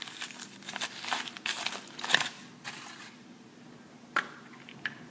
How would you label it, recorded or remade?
recorded